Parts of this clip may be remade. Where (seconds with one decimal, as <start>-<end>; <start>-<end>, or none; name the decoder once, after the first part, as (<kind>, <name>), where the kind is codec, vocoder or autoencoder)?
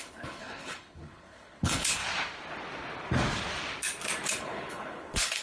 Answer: 0.0-2.0 (codec, HILCodec); 4.3-5.4